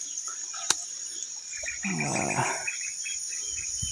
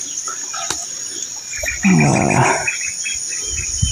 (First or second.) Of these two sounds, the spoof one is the first